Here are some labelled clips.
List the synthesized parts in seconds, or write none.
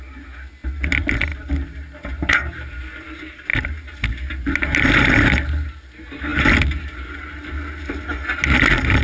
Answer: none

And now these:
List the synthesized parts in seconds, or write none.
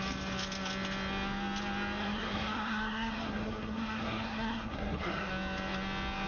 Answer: 2.0-5.3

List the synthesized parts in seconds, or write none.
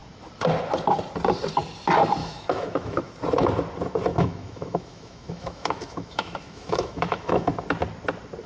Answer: 2.2-3.1; 4.1-7.5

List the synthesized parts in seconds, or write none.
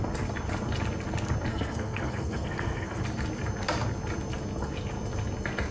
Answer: 1.5-3.0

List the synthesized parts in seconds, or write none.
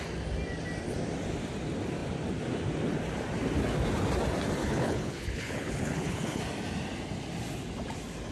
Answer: 4.6-6.4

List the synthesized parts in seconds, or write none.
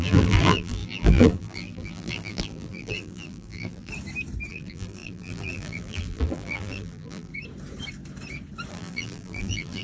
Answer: 0.0-3.9; 4.5-7.3; 8.7-9.8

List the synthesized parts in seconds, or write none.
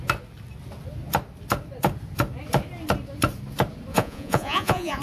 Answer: 3.9-5.0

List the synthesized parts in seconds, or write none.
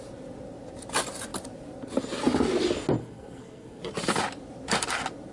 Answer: 3.0-3.8